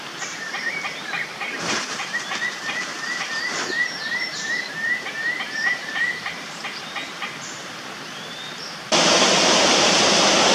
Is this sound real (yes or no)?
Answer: no